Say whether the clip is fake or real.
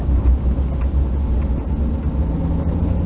real